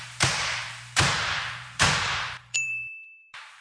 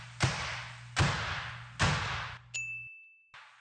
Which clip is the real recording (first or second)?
second